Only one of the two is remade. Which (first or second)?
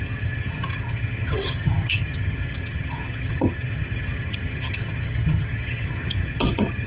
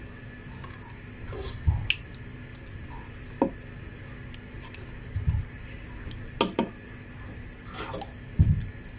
first